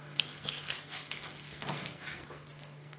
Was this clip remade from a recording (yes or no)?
yes